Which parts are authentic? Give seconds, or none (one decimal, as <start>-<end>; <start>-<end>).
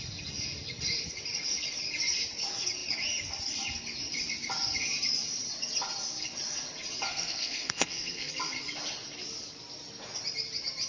0.0-7.1; 8.3-10.9